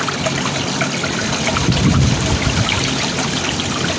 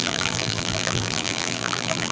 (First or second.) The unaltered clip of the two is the first